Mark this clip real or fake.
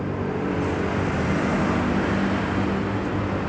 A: real